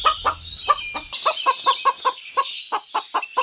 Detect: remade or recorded recorded